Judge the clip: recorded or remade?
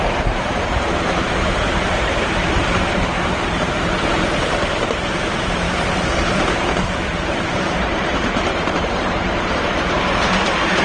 remade